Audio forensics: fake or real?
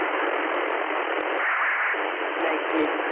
real